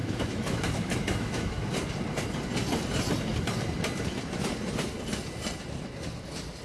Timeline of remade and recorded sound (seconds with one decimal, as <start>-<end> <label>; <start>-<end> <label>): 0.0-1.7 remade; 1.7-6.6 recorded